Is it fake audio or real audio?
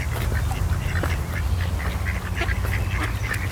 real